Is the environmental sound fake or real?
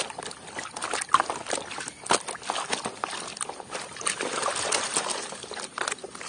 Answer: real